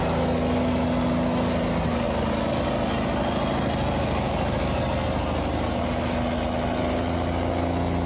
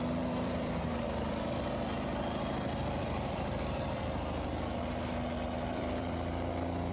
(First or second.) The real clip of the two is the first